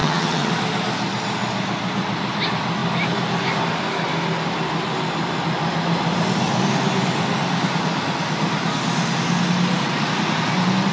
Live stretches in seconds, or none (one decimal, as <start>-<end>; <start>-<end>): 0.5-10.9